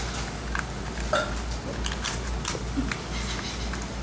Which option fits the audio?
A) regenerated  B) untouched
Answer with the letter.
B